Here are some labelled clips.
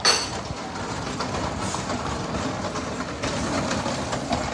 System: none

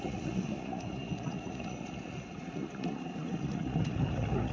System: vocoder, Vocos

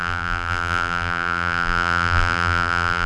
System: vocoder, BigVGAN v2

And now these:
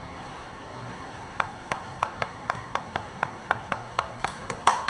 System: codec, SNAC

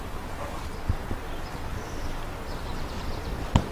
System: none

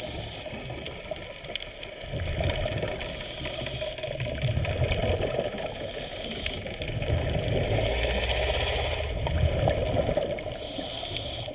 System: none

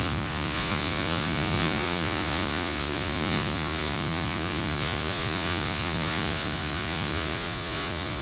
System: vocoder, Vocos